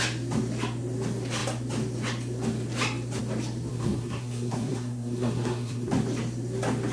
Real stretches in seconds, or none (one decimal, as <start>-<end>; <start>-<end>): 0.0-3.7; 5.9-6.9